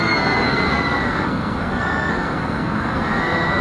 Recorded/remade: remade